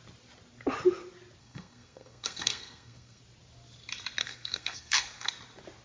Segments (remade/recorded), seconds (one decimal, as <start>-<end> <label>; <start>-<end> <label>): 0.0-1.4 recorded; 1.4-3.2 remade; 3.2-4.2 recorded; 4.2-5.3 remade; 5.3-5.8 recorded